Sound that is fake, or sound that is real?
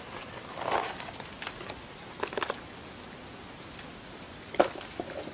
real